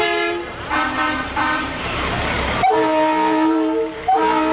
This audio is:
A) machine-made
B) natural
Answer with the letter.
A